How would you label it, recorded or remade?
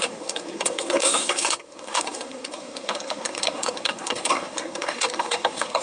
remade